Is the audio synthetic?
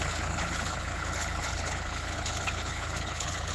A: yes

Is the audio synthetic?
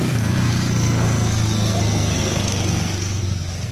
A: yes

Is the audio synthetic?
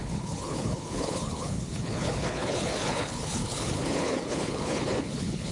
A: yes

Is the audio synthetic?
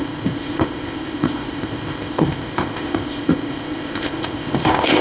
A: yes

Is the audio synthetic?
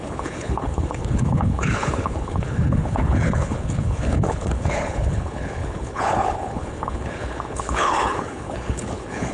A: yes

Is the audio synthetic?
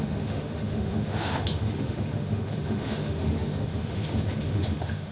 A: yes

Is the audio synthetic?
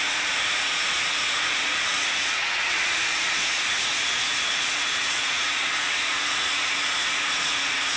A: yes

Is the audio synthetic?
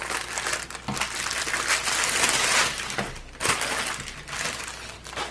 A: no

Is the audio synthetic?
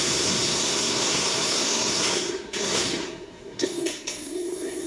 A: yes